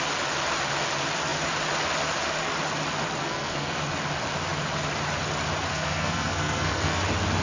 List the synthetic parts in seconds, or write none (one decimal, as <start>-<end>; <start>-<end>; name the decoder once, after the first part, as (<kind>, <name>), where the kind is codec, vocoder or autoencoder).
3.2-3.8 (codec, SNAC); 5.7-7.0